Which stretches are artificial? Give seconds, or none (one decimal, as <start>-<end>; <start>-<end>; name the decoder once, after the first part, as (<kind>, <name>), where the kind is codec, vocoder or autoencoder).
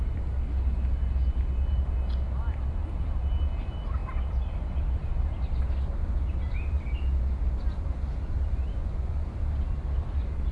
8.8-9.4 (vocoder, Vocos)